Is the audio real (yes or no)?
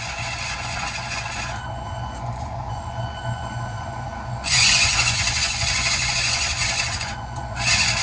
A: no